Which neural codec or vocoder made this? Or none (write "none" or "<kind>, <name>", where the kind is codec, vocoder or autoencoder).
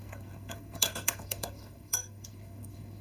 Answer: codec, SNAC